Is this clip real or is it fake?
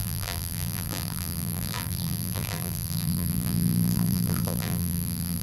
fake